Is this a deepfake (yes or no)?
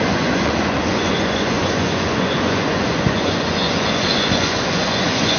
yes